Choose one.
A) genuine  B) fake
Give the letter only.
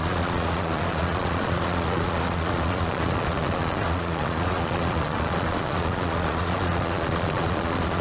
B